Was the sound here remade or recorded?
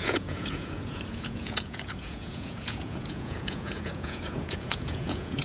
remade